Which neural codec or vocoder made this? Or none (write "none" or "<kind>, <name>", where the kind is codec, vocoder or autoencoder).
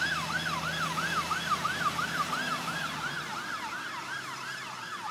none